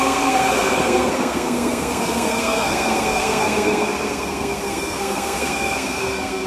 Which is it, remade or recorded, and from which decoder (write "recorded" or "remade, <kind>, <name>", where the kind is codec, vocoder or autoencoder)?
remade, codec, SNAC